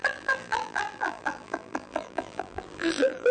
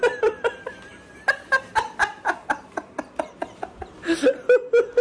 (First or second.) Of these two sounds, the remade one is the first